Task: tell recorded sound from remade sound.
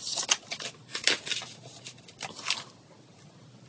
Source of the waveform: recorded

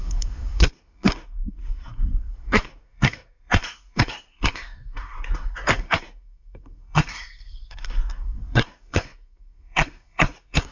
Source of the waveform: remade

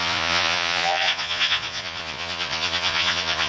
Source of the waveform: remade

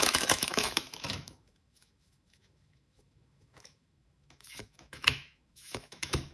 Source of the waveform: remade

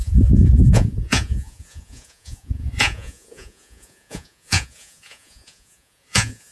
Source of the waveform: remade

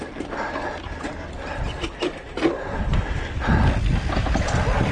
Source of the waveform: recorded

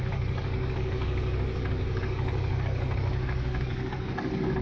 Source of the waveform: remade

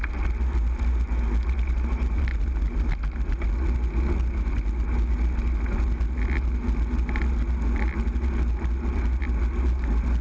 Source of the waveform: recorded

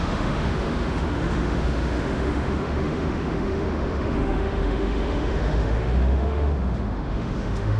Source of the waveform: remade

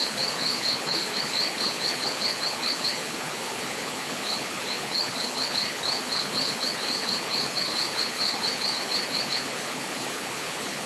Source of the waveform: remade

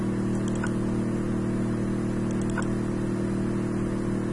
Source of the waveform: recorded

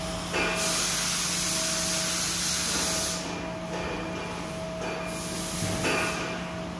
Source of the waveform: recorded